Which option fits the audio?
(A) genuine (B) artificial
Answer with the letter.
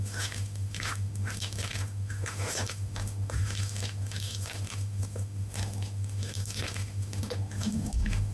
B